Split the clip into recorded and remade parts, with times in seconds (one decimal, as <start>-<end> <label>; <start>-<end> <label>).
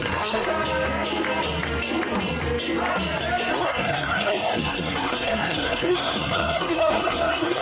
0.0-0.5 remade; 0.5-3.5 recorded; 3.5-7.6 remade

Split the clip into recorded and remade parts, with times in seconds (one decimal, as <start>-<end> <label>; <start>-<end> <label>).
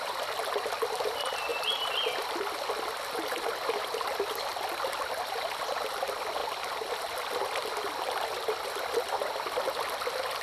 0.0-10.4 recorded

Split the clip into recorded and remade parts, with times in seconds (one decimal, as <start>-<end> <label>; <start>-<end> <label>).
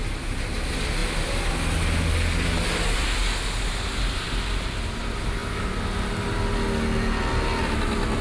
0.0-8.2 recorded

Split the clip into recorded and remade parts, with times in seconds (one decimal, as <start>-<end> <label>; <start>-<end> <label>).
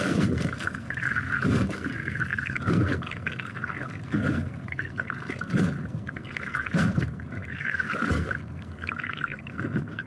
0.0-10.1 remade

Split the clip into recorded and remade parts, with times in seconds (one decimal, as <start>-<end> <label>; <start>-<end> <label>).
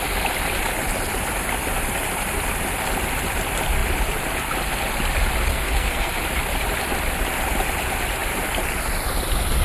0.0-5.5 recorded; 5.5-6.2 remade; 6.2-9.6 recorded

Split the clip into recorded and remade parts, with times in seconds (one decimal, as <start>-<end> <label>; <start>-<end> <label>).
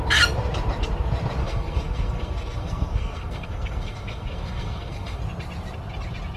0.0-1.4 recorded; 1.4-5.2 remade; 5.2-6.4 recorded